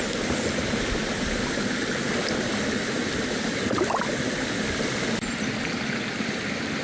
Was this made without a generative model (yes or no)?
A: yes